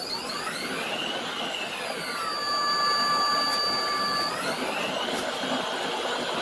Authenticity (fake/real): real